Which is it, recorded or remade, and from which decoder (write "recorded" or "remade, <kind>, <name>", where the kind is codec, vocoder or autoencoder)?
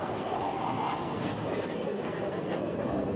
remade, codec, SNAC